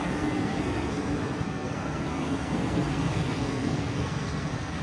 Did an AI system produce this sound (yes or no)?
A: yes